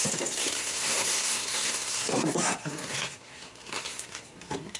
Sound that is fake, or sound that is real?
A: fake